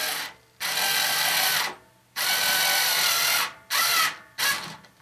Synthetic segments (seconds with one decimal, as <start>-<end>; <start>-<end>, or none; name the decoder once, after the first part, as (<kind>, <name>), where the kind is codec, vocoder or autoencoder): 1.4-5.0 (vocoder, BigVGAN v2)